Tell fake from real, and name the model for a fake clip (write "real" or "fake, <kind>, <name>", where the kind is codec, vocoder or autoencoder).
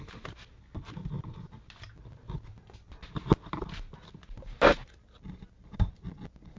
real